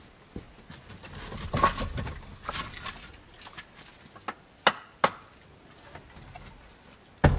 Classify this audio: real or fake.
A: real